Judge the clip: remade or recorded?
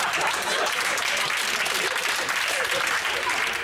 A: recorded